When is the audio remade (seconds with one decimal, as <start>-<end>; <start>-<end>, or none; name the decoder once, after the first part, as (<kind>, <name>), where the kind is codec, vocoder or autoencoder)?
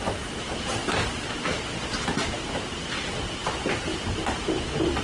none